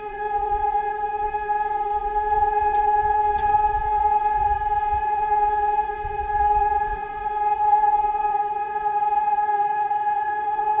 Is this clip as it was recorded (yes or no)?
no